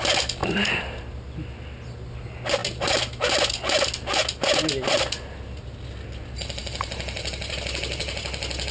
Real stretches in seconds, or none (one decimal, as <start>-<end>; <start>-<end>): 0.0-8.7